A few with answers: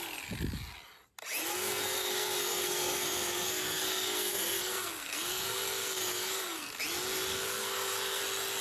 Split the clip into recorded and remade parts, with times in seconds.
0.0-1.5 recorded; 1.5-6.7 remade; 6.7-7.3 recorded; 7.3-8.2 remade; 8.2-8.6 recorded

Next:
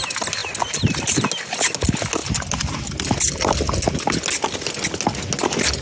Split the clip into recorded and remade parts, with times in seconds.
0.0-5.8 recorded

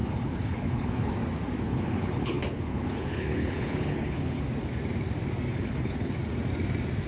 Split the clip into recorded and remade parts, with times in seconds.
0.0-1.1 remade; 1.1-1.7 recorded; 1.7-4.4 remade; 4.4-5.5 recorded; 5.5-6.1 remade; 6.1-7.1 recorded

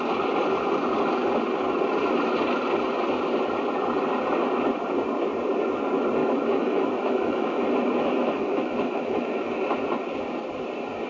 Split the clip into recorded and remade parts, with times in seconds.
0.0-6.2 recorded; 6.2-9.6 remade; 9.6-11.1 recorded

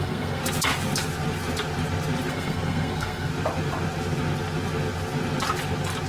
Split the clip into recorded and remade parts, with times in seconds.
0.0-0.4 remade; 0.4-2.3 recorded; 2.3-3.3 remade; 3.3-6.1 recorded